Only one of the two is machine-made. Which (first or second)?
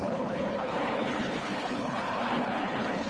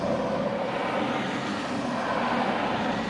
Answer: first